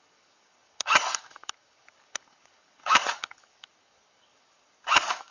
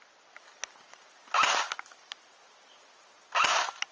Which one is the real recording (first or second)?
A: second